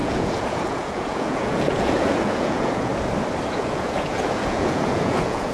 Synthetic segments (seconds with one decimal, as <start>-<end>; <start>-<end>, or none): 0.0-2.9; 3.5-5.5